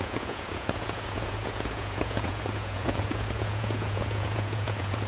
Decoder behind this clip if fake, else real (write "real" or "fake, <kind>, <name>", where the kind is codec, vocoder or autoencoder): fake, vocoder, Vocos